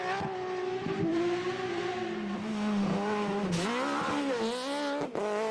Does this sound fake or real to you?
real